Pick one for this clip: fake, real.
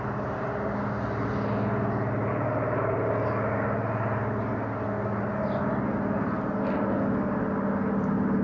real